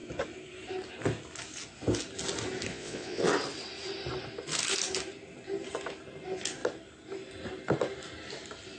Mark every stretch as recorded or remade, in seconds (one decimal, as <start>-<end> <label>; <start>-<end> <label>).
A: 0.0-2.7 recorded; 2.7-3.2 remade; 3.2-8.8 recorded